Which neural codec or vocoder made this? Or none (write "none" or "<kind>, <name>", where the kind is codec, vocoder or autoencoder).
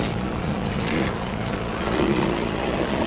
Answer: vocoder, Vocos